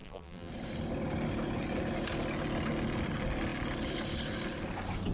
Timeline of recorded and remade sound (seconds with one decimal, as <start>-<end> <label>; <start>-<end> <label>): 0.0-0.5 remade; 0.5-5.1 recorded